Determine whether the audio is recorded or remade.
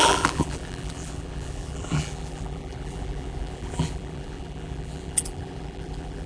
remade